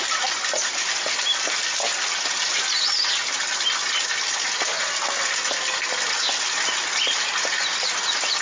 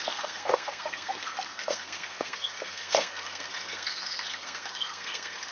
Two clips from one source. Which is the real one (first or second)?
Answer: first